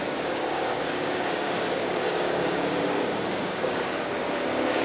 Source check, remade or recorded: remade